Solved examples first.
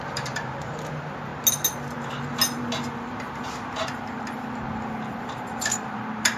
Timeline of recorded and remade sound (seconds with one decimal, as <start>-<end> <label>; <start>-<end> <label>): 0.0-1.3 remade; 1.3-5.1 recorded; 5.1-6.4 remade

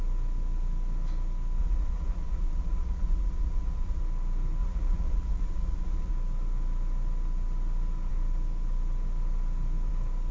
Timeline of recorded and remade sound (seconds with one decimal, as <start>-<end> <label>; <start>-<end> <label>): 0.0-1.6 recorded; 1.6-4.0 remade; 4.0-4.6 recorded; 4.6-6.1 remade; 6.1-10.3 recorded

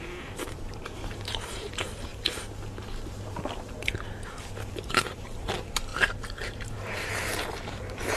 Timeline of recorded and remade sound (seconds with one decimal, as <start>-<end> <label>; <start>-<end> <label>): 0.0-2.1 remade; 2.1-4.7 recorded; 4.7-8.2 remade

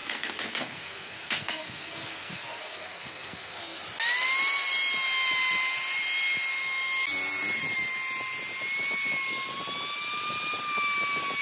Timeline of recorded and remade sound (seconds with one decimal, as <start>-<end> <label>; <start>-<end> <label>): 0.0-3.8 remade; 3.8-11.4 recorded

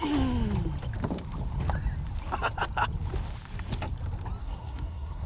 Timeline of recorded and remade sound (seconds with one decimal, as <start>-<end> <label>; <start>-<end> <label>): 0.0-4.4 recorded; 4.4-5.3 remade

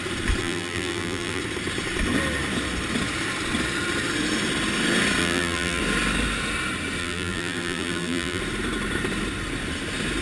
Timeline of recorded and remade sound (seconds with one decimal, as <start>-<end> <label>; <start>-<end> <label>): 0.0-0.4 recorded; 0.4-1.4 remade; 1.4-5.2 recorded; 5.2-5.8 remade; 5.8-7.0 recorded; 7.0-8.4 remade; 8.4-10.2 recorded

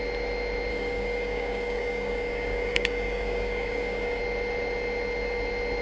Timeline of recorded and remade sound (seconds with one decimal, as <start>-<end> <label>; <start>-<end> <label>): 0.0-0.7 recorded; 0.7-4.2 remade; 4.2-5.8 recorded

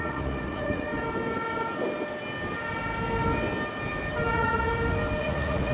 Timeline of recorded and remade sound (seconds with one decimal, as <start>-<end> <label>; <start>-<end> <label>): 0.0-0.9 remade; 0.9-4.3 recorded; 4.3-4.7 remade; 4.7-5.2 recorded; 5.2-5.7 remade